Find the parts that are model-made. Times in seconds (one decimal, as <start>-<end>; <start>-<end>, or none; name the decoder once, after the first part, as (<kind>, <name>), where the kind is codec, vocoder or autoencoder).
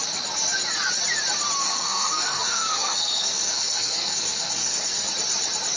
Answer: 1.6-5.1 (codec, SNAC)